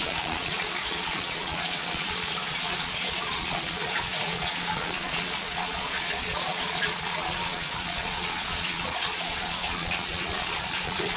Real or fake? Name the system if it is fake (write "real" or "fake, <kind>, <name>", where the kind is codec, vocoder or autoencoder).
fake, vocoder, Vocos